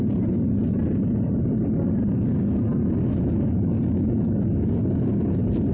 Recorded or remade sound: recorded